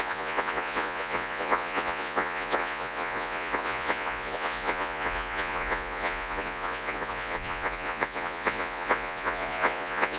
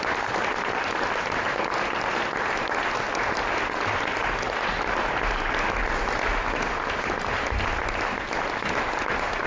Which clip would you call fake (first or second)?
first